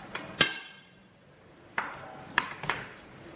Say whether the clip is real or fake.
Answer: fake